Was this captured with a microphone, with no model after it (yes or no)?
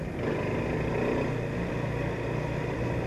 yes